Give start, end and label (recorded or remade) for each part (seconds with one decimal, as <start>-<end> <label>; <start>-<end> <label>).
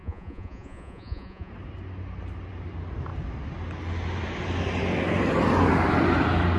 0.0-1.5 remade; 1.5-6.6 recorded